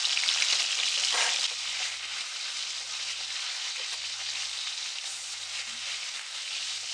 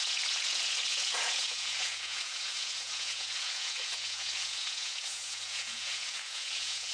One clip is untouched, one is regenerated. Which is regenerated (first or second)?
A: second